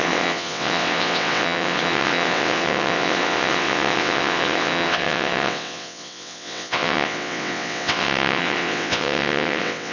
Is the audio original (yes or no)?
no